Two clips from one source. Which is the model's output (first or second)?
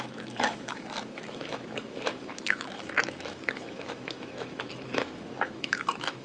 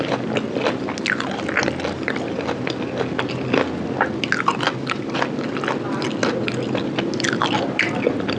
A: first